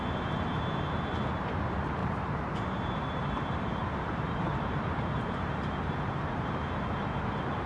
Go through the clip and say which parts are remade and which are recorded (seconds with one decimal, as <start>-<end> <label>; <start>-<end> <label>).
0.0-2.0 recorded; 2.0-6.6 remade; 6.6-7.7 recorded